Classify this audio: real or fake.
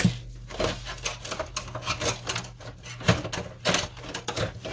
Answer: real